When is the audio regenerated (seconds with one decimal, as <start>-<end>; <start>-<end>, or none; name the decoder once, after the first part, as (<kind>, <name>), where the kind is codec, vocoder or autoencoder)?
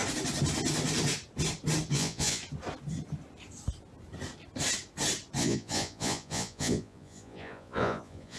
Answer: 1.9-2.4 (vocoder, Vocos); 5.4-8.4